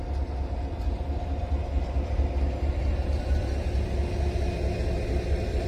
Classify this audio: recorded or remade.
recorded